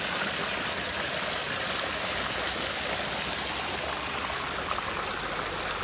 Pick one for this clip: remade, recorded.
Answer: recorded